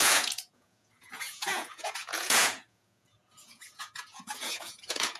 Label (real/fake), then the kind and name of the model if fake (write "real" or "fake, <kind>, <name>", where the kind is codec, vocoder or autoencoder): fake, vocoder, Vocos